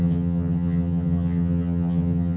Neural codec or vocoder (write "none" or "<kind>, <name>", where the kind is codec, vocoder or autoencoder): vocoder, HiFi-GAN